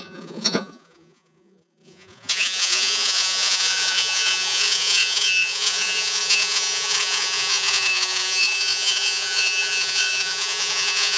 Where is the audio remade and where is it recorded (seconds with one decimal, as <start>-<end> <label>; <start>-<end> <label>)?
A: 0.0-11.2 remade